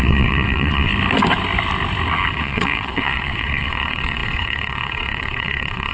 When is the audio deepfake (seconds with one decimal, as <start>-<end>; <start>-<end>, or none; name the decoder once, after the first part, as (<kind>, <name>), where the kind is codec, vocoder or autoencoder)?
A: 0.0-0.9 (vocoder, WaveNeXt); 2.3-5.9